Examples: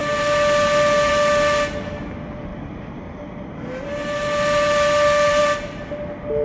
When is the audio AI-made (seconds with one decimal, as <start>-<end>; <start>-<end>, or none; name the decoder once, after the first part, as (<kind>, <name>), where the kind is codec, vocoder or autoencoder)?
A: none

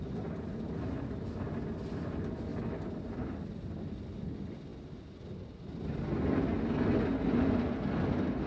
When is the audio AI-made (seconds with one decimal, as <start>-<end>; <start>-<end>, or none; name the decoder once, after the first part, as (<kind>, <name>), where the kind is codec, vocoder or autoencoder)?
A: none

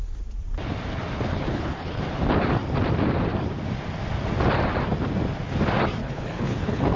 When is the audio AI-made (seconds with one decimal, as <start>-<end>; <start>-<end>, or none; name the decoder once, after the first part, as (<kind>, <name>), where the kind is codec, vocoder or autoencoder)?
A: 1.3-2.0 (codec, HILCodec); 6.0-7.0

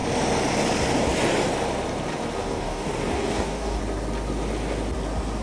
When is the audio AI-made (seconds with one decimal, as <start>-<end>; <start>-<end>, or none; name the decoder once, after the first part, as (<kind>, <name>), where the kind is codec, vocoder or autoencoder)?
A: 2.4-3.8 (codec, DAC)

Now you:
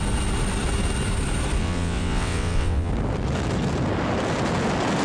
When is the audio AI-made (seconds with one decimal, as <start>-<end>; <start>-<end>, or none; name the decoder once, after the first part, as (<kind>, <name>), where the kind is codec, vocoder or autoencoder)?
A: 1.6-2.9 (vocoder, WaveNeXt)

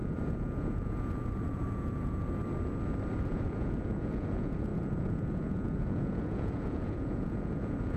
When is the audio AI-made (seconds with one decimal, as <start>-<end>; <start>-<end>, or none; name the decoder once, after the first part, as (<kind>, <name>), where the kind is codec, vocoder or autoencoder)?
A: 0.0-2.4 (vocoder, Vocos); 3.2-8.0